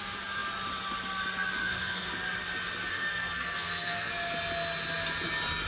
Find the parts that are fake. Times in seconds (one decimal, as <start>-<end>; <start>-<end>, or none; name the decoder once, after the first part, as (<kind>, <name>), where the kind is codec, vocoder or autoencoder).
1.6-2.1 (codec, SNAC); 2.9-4.1